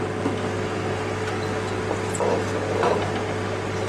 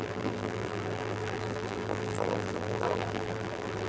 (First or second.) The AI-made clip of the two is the second